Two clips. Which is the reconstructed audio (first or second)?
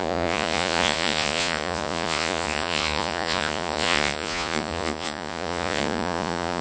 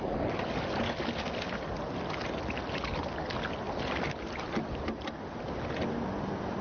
first